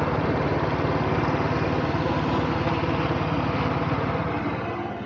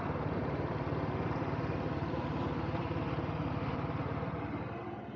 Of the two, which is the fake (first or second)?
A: second